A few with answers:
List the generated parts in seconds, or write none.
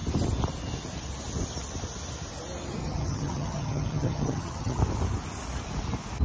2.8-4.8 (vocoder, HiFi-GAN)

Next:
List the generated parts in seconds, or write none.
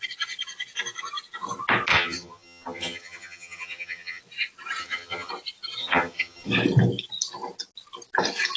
1.9-4.2 (vocoder, HiFi-GAN); 4.8-5.3; 5.8-6.5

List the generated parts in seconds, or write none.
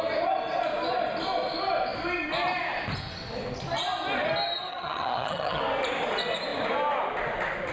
4.7-5.6 (vocoder, HiFi-GAN)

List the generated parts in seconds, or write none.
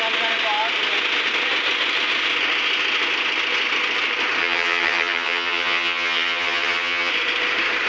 4.4-7.1 (vocoder, HiFi-GAN)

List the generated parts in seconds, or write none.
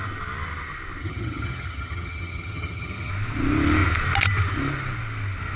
1.0-3.1 (vocoder, HiFi-GAN)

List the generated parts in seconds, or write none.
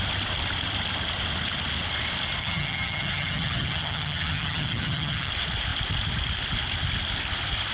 2.4-5.3 (vocoder, HiFi-GAN)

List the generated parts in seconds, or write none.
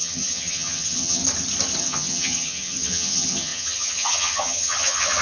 0.0-1.2 (vocoder, HiFi-GAN); 1.8-5.2